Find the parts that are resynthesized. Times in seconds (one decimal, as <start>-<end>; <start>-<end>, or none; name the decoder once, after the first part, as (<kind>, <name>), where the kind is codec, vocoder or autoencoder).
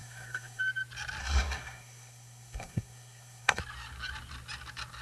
0.0-0.6 (codec, SNAC); 1.2-3.6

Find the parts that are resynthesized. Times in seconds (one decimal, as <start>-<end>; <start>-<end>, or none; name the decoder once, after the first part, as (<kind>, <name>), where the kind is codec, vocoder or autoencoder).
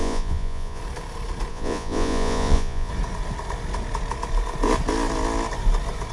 0.0-0.8 (vocoder, Vocos); 1.5-2.9